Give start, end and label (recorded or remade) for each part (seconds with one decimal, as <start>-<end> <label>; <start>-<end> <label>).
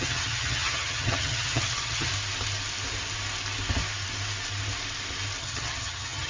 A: 0.0-2.1 remade; 2.1-5.4 recorded; 5.4-6.3 remade